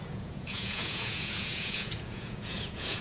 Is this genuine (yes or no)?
no